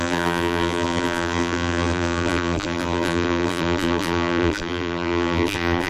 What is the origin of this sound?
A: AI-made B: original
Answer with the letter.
A